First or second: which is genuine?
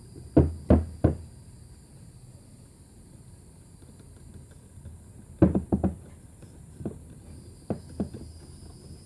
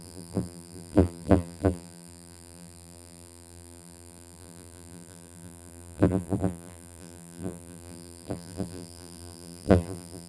first